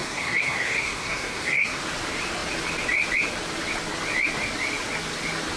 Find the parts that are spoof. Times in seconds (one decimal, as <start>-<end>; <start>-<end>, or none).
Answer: 0.0-1.8